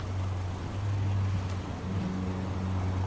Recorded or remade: recorded